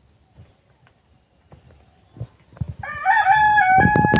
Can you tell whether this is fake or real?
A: real